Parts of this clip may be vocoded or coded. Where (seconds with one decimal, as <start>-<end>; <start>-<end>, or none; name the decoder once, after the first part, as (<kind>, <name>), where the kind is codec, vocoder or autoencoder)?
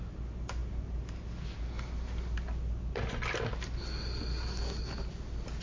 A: none